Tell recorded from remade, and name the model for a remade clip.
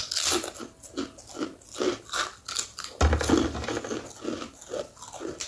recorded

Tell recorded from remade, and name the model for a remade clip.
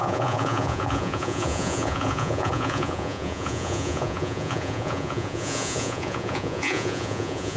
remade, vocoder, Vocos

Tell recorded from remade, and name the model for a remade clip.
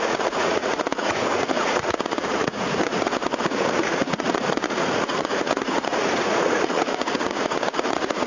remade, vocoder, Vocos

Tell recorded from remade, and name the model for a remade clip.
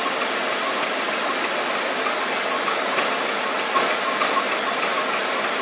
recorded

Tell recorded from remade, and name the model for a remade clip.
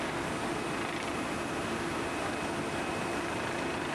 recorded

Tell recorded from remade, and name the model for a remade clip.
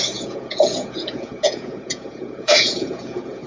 remade, vocoder, Vocos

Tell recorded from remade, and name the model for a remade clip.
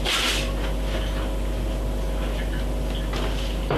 recorded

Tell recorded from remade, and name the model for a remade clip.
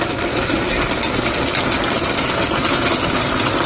recorded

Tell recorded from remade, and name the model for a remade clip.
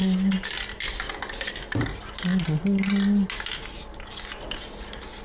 recorded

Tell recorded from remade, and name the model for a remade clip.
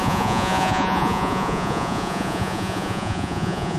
remade, vocoder, Vocos